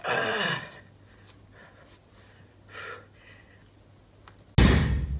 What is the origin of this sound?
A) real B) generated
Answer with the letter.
A